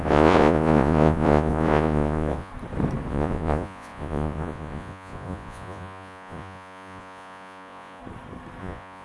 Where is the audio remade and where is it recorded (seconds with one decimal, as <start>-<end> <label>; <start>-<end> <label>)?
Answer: 0.0-2.5 remade; 2.5-3.1 recorded; 3.1-8.0 remade; 8.0-8.6 recorded; 8.6-9.0 remade